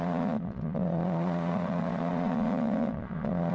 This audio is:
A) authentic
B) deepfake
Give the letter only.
B